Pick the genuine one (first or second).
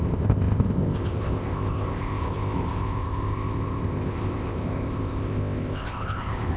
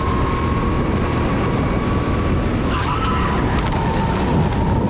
second